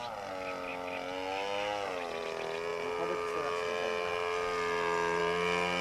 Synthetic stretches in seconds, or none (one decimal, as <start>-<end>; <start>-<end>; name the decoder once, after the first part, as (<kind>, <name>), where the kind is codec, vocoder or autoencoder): none